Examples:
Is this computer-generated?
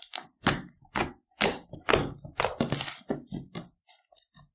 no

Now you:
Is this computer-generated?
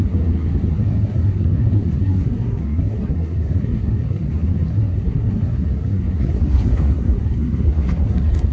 yes